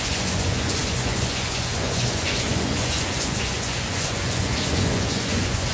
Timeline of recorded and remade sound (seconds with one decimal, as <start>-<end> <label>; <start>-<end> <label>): 0.0-5.7 remade